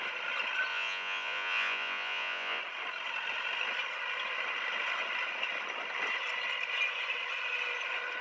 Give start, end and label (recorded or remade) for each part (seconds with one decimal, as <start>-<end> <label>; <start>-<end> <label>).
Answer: 0.0-0.7 recorded; 0.7-2.6 remade; 2.6-8.2 recorded